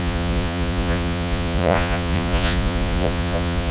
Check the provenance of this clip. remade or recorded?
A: remade